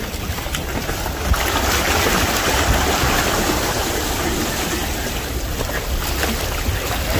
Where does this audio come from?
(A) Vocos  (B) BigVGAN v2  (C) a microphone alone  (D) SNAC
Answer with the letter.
C